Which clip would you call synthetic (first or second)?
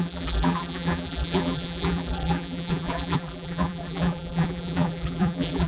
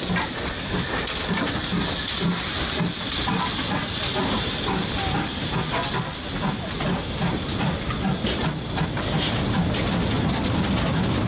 first